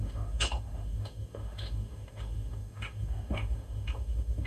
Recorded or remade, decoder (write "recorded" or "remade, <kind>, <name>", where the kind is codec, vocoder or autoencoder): remade, autoencoder, DAC-VAE